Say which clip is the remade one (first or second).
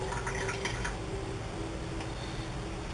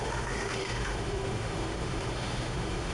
second